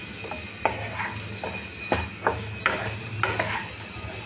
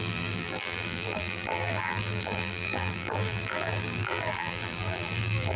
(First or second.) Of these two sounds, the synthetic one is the second